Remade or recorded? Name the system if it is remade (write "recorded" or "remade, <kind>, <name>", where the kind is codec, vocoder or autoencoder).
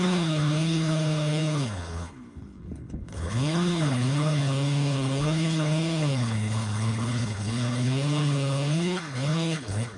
remade, codec, HILCodec